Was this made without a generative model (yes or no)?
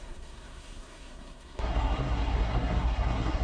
no